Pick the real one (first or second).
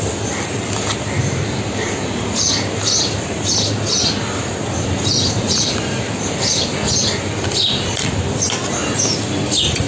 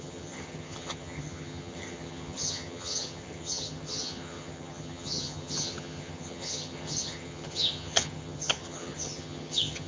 first